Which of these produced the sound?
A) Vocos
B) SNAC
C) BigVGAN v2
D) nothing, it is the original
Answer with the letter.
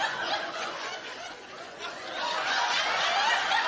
A